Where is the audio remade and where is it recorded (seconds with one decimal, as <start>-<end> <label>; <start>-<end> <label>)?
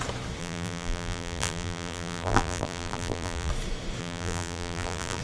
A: 0.0-0.4 recorded; 0.4-3.5 remade; 3.5-4.0 recorded; 4.0-5.2 remade